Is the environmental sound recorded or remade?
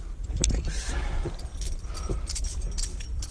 recorded